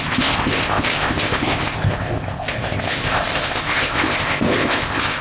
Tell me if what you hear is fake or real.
fake